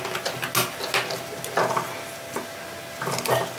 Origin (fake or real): real